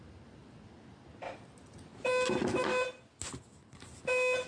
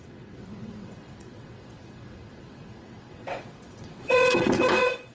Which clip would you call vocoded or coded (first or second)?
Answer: second